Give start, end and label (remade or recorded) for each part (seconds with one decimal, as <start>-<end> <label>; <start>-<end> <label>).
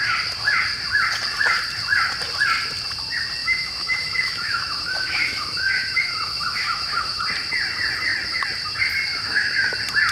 0.0-3.4 recorded; 3.4-7.2 remade; 7.2-9.1 recorded; 9.1-9.7 remade; 9.7-10.1 recorded